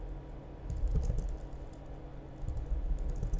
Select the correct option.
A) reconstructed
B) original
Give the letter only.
B